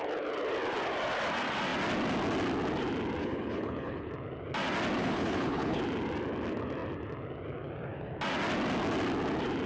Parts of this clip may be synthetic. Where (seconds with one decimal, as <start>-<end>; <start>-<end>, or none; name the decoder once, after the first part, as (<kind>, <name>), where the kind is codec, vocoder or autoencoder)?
3.2-4.1 (codec, HILCodec); 5.0-5.8